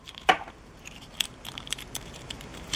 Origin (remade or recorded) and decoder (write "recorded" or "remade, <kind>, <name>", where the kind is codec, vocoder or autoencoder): remade, vocoder, BigVGAN v2